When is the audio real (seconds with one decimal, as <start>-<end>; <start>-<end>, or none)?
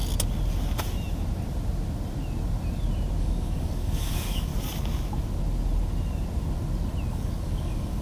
0.0-3.2; 4.5-7.1